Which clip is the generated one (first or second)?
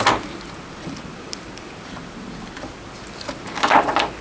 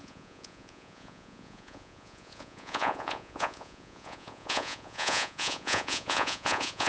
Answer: second